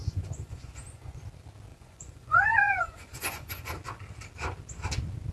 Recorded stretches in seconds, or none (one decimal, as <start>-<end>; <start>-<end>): 1.2-1.7; 3.7-5.3